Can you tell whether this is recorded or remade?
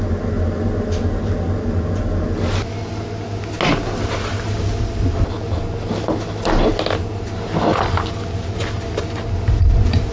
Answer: recorded